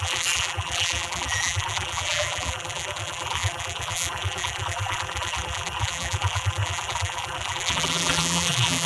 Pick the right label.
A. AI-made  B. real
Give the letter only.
A